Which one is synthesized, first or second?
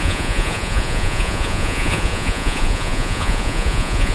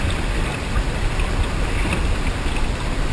first